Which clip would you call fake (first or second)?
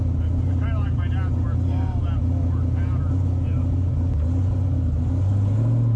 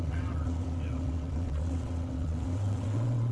second